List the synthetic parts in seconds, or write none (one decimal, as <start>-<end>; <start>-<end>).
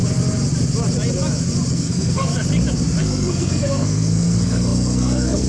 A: 1.7-2.3; 3.0-5.5